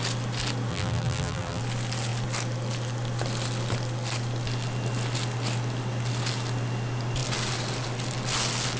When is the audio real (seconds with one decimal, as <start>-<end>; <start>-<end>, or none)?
0.0-0.7; 1.6-8.8

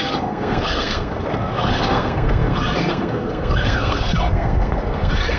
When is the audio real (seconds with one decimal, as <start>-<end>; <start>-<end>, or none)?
none

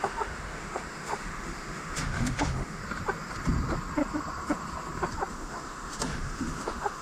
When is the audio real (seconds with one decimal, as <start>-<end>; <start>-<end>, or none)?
2.8-5.3

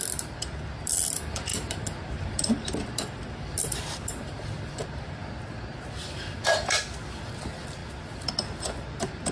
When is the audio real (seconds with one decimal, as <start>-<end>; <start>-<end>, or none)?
5.2-5.9

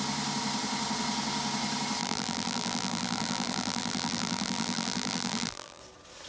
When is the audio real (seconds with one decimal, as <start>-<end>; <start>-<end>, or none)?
0.0-2.0; 5.8-6.3

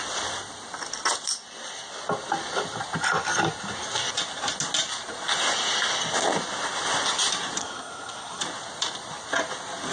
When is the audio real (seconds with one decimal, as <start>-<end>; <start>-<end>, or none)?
0.0-7.6; 8.4-9.9

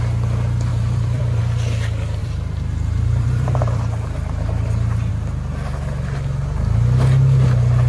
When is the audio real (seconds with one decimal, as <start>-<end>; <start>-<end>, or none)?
0.0-0.7; 1.4-2.2; 5.1-7.9